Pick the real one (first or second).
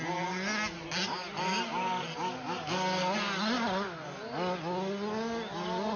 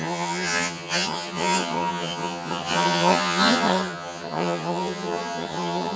first